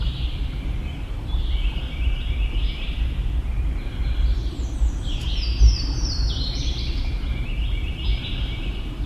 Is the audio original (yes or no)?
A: no